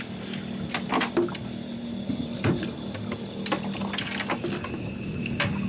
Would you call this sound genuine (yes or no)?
yes